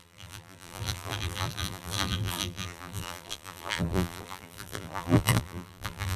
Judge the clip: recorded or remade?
remade